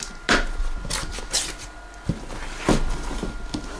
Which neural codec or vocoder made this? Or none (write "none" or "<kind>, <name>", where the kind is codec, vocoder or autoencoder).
none